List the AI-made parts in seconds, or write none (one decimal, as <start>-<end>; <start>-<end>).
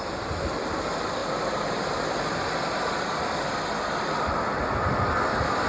none